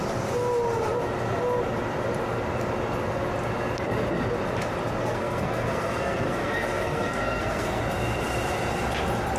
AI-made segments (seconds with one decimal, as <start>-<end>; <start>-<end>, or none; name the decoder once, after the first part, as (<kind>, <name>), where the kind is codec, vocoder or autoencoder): 5.0-7.8 (codec, SNAC)